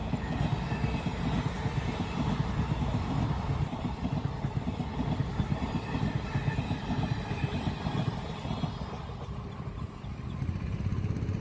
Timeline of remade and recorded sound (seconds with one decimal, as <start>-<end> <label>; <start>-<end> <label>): 0.0-11.4 recorded